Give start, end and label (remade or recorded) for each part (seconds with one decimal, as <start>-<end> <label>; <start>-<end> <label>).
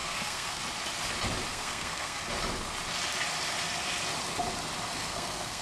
0.0-0.6 remade; 0.6-1.5 recorded; 1.5-2.2 remade; 2.2-5.0 recorded; 5.0-5.6 remade